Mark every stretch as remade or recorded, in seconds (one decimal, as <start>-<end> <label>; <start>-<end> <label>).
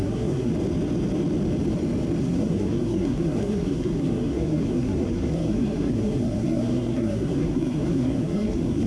0.0-0.5 remade; 0.5-2.2 recorded; 2.2-8.9 remade